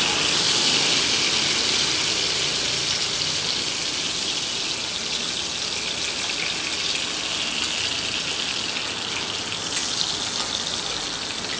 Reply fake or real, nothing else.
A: real